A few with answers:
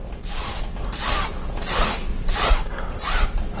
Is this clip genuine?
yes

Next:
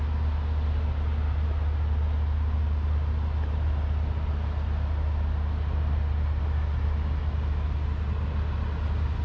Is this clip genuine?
yes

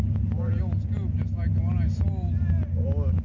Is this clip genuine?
yes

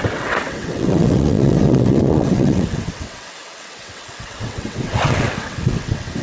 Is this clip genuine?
no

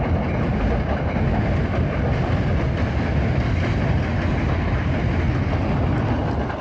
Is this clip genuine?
yes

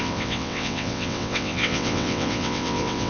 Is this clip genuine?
no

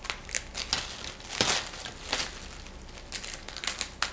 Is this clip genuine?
yes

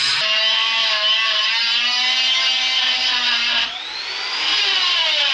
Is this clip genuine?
yes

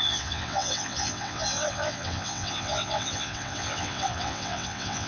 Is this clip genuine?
no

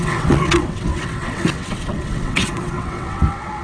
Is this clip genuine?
no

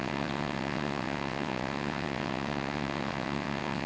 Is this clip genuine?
no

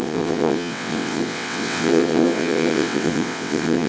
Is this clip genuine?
no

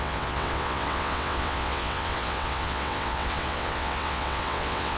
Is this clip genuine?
no